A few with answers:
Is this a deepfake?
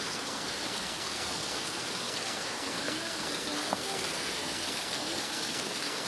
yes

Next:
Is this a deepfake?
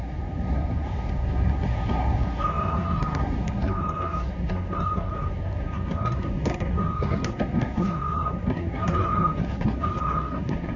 yes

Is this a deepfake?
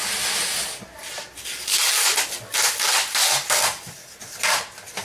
no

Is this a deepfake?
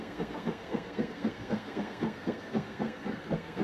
yes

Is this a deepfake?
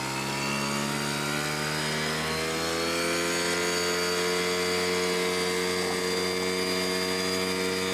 no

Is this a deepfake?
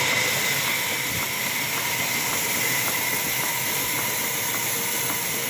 no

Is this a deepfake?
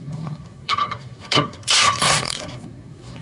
yes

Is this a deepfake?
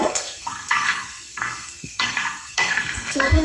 yes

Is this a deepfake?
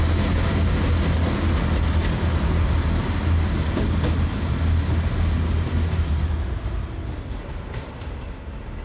no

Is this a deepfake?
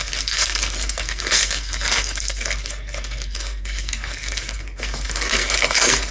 yes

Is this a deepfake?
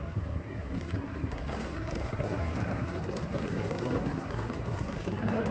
yes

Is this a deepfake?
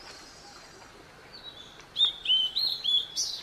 no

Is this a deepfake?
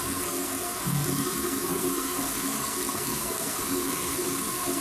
yes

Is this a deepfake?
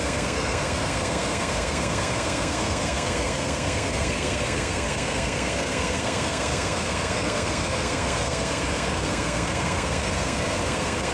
yes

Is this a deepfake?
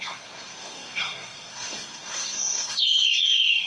yes